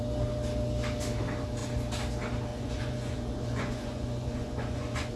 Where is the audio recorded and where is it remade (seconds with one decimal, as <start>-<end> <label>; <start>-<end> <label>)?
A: 0.0-2.5 recorded; 2.5-5.2 remade